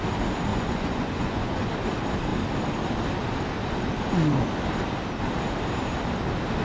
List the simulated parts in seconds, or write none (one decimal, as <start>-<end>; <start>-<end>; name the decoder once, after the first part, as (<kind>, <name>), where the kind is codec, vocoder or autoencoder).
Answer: 0.5-1.7 (vocoder, Vocos)